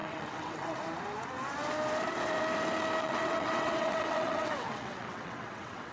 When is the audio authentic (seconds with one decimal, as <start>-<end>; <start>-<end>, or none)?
0.8-3.0